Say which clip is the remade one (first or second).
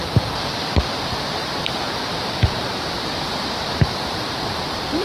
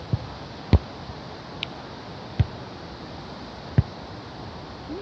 first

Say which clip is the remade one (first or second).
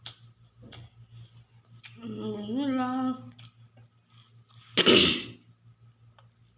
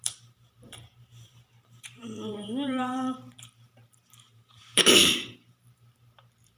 second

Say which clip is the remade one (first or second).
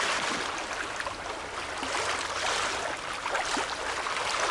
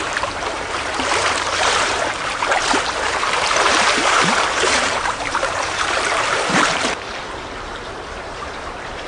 second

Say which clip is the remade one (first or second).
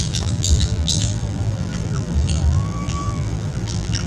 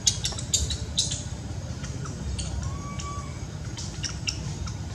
first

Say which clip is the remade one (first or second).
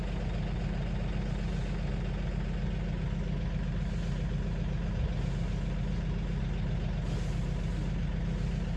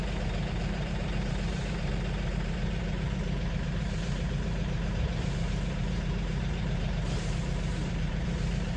second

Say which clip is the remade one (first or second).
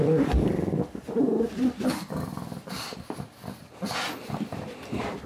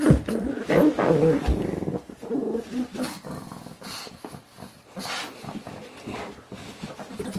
first